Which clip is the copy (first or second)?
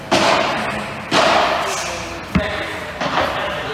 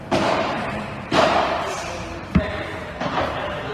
second